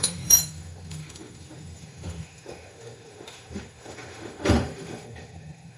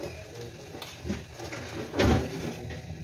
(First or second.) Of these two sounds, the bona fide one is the second